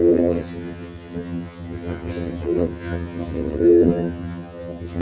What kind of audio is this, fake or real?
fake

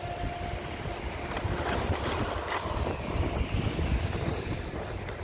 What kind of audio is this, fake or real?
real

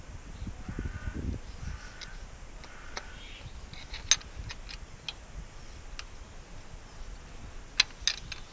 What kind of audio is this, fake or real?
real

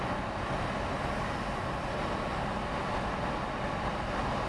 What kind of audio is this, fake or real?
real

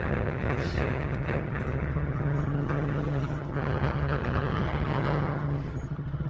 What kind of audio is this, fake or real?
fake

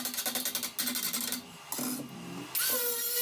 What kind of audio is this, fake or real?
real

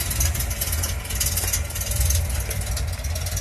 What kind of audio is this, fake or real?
real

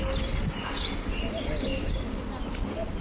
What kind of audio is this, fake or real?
real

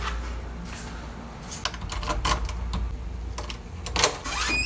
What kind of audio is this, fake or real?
real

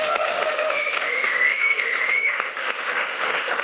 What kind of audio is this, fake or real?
fake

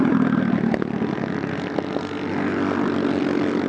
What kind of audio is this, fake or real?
real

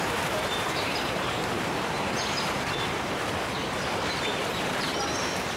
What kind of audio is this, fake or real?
fake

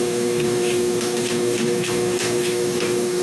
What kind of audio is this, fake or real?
fake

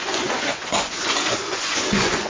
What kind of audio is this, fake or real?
fake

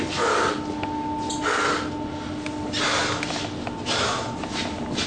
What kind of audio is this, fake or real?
real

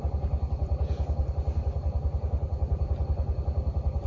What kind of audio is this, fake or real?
real